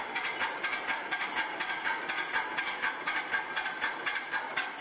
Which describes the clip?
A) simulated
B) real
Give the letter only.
B